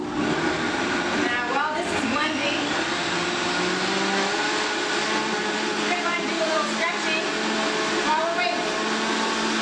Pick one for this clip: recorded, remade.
recorded